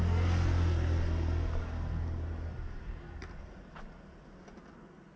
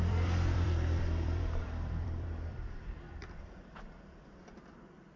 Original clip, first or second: first